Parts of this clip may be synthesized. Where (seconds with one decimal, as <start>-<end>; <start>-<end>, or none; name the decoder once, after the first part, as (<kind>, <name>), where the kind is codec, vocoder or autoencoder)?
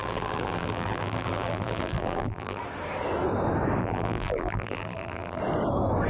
0.0-2.6 (vocoder, BigVGAN v2); 3.8-5.4